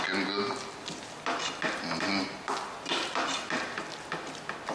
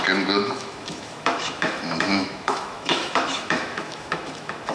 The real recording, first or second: first